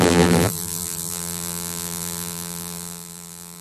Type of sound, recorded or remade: remade